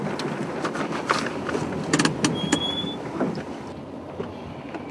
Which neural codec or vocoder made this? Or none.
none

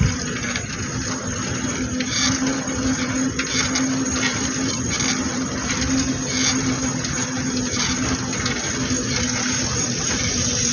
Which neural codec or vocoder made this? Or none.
none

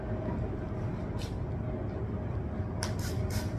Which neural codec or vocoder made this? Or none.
none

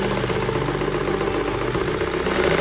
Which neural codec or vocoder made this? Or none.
none